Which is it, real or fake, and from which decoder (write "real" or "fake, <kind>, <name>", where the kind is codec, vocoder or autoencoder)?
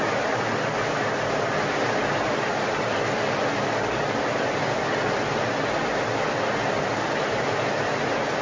real